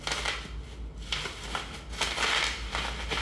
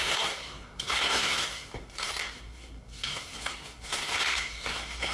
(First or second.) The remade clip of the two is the second